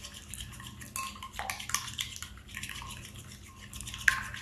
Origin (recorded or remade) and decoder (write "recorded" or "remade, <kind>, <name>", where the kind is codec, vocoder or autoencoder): recorded